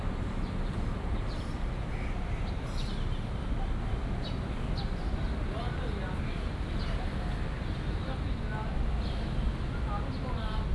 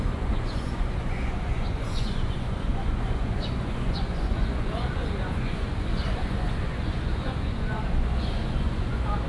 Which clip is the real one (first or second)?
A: first